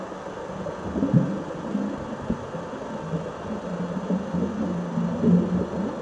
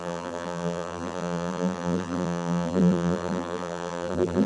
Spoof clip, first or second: second